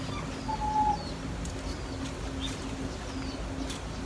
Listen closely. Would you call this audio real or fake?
real